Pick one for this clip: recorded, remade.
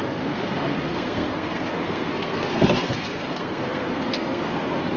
remade